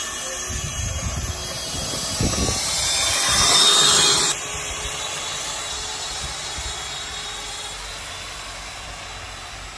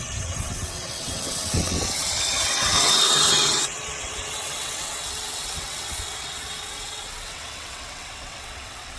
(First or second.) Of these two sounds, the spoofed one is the second